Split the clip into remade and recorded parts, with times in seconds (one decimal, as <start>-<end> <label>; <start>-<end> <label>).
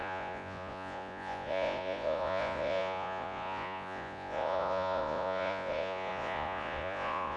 0.0-7.4 remade